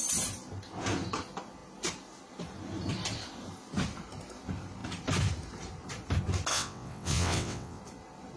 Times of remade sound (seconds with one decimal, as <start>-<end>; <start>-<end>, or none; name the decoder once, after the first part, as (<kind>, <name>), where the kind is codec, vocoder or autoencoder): 6.5-7.8 (vocoder, WaveNeXt)